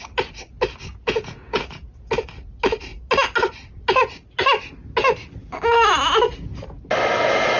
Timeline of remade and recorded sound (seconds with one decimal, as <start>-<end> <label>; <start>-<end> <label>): 0.0-0.9 recorded; 0.9-2.1 remade; 2.1-7.6 recorded

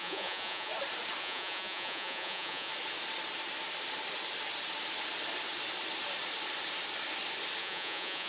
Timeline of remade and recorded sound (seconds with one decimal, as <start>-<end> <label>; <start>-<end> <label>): 0.0-0.7 remade; 0.7-1.2 recorded; 1.2-2.7 remade; 2.7-7.6 recorded; 7.6-8.3 remade

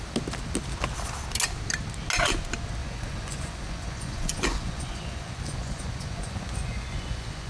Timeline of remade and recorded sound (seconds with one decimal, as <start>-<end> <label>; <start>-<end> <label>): 0.0-2.8 recorded; 2.8-7.5 remade